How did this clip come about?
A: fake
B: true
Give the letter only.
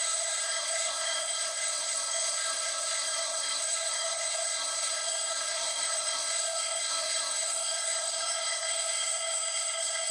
A